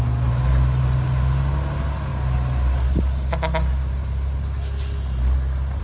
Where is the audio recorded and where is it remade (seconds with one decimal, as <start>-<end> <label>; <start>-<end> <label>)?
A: 0.0-5.8 recorded